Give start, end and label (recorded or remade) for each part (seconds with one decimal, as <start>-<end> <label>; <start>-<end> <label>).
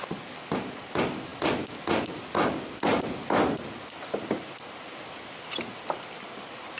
0.0-6.8 recorded